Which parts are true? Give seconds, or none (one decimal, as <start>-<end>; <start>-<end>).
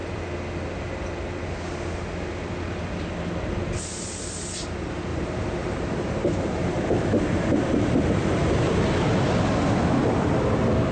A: 0.0-5.1; 8.8-10.9